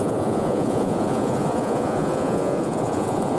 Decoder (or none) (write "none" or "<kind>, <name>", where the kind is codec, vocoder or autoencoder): vocoder, Vocos